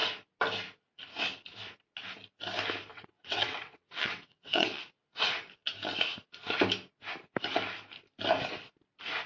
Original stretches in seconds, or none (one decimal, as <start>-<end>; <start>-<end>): 0.0-2.9; 4.8-9.3